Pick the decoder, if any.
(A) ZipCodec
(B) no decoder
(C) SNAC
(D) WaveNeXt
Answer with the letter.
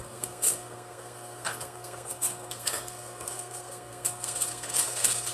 C